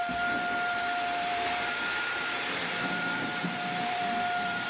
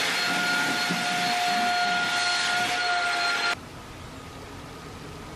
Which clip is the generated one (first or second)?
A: first